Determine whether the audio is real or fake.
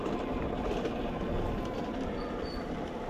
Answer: real